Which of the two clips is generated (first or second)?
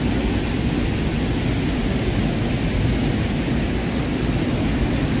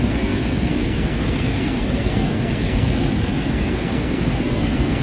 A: second